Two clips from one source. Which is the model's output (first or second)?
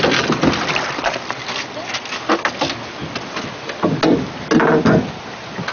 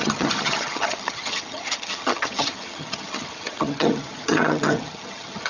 second